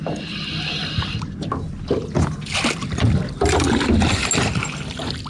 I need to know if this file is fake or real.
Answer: real